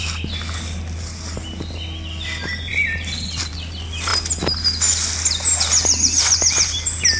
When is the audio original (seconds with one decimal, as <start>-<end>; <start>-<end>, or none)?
0.0-7.2